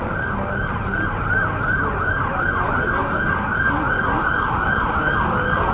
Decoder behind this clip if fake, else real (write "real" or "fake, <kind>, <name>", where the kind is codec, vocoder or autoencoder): real